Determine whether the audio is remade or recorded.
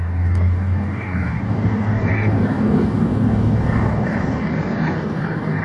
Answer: remade